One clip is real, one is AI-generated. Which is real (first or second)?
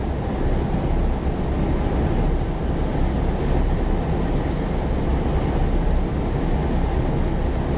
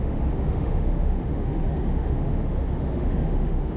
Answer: first